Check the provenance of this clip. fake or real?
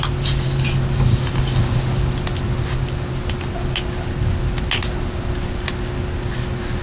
real